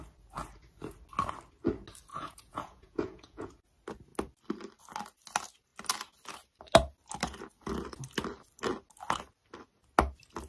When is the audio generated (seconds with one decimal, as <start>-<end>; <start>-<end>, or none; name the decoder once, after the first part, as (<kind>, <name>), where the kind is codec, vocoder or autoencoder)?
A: 2.1-3.5 (vocoder, Vocos)